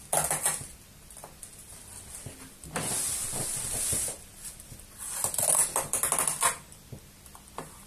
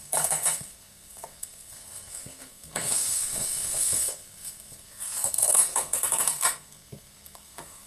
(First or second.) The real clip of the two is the first